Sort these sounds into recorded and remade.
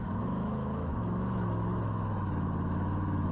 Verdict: remade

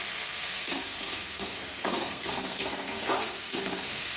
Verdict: remade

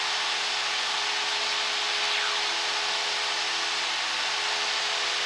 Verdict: recorded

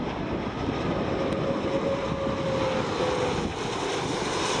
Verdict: recorded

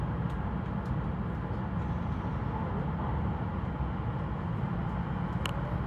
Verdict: recorded